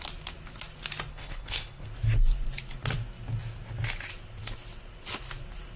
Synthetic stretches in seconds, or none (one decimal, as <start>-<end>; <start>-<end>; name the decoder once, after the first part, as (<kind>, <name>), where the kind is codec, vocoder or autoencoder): 1.1-1.9 (codec, HILCodec)